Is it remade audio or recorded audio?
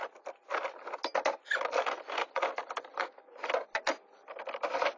recorded